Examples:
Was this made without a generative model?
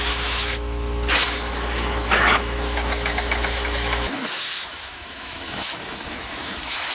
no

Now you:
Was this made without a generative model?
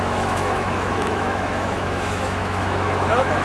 no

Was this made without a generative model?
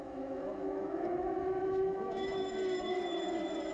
no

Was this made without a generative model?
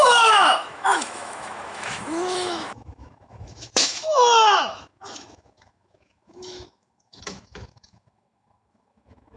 no